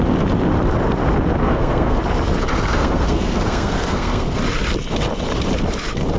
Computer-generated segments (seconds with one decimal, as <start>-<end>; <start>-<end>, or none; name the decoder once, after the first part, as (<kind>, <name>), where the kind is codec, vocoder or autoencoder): 1.4-2.0 (codec, SNAC); 2.7-4.4